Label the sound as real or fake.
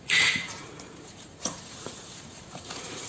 fake